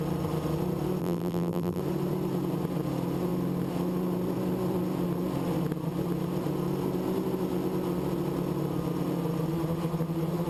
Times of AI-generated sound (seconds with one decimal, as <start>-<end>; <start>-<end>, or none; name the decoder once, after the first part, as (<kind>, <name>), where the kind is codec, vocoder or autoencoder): 1.0-1.8 (vocoder, BigVGAN v2)